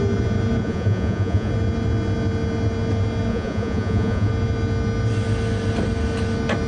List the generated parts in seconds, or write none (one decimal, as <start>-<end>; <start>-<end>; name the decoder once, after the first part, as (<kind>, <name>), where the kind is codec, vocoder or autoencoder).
0.6-1.5 (vocoder, Vocos); 3.3-4.3